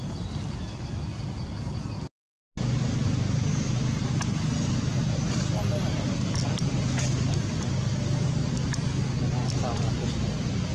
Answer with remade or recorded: recorded